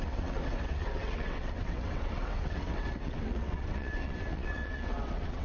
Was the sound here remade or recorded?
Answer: remade